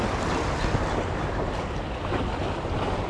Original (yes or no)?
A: yes